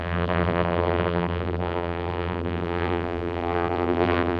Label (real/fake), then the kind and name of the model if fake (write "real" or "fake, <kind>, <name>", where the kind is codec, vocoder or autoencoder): fake, vocoder, BigVGAN v2